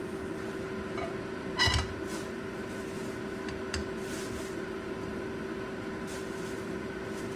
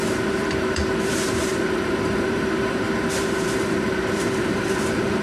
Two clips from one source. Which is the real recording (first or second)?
first